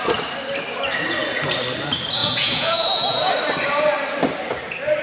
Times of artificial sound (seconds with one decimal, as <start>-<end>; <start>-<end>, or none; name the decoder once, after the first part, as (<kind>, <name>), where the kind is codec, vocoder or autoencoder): 2.2-3.3 (vocoder, Vocos)